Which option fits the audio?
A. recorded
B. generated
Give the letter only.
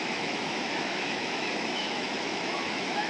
B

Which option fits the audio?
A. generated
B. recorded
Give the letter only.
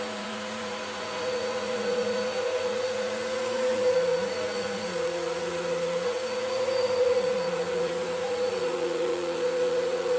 A